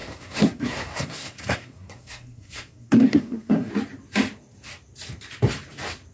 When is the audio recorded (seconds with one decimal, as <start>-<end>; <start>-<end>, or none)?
3.7-6.1